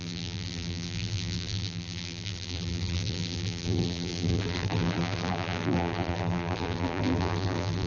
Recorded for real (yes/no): no